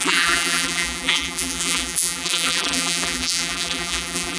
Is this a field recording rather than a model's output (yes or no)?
no